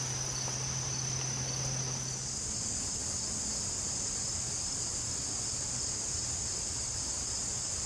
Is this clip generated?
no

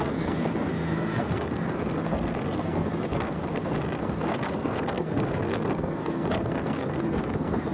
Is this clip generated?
yes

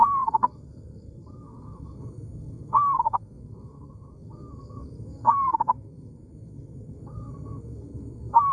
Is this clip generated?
yes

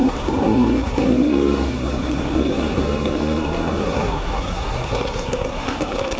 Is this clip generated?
yes